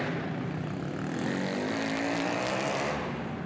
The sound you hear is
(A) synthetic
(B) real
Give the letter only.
B